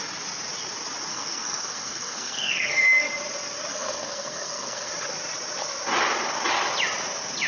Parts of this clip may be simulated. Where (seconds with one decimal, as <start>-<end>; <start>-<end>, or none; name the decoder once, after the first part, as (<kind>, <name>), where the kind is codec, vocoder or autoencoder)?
1.1-3.1 (codec, SNAC); 3.7-4.9